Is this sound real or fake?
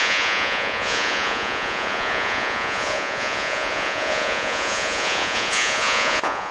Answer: fake